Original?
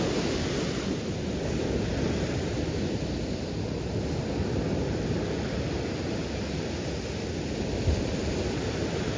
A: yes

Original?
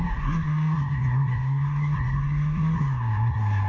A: no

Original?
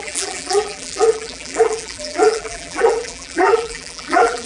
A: no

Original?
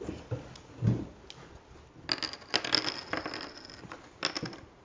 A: yes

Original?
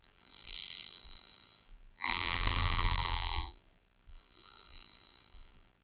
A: no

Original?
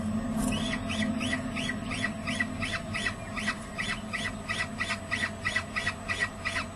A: yes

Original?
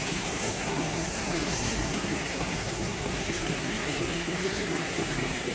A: no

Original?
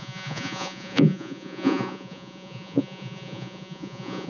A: no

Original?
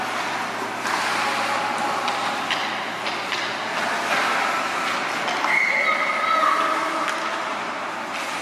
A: yes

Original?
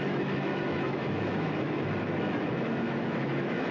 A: no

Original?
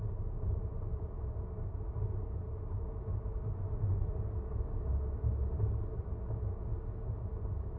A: yes